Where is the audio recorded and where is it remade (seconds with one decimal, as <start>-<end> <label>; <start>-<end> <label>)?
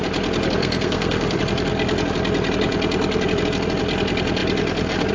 0.0-0.6 recorded; 0.6-1.4 remade; 1.4-5.1 recorded